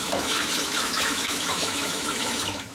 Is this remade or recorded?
remade